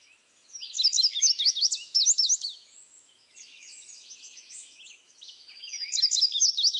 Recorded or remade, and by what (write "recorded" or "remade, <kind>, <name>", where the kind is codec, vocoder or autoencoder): remade, autoencoder, DAC-VAE